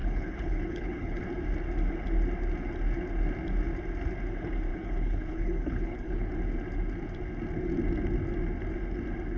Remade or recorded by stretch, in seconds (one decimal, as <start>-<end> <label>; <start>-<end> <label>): 0.0-1.2 remade; 1.2-4.7 recorded; 4.7-6.3 remade; 6.3-9.4 recorded